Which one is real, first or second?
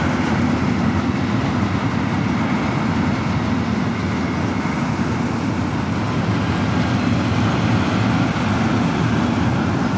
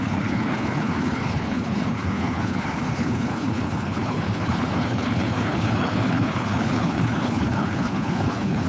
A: first